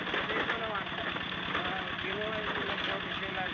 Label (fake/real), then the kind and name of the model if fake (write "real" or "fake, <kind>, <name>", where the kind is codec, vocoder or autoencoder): real